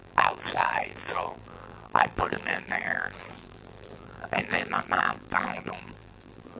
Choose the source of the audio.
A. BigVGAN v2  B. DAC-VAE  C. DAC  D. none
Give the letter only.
A